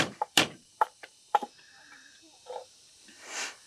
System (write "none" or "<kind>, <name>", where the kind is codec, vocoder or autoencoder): vocoder, BigVGAN v2